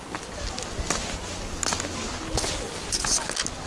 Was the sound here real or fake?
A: real